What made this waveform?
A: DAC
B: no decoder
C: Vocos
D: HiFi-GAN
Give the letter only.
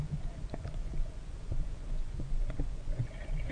C